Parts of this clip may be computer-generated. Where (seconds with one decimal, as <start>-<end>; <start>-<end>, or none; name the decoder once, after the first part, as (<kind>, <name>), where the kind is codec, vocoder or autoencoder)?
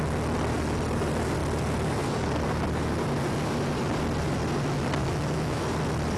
5.0-5.6 (autoencoder, DAC-VAE)